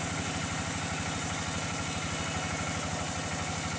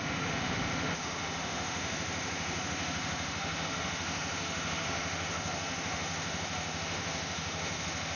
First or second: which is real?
first